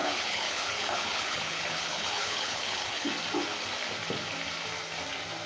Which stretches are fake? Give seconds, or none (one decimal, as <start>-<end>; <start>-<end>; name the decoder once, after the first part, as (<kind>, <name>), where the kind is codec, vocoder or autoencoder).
0.0-3.1 (codec, HILCodec)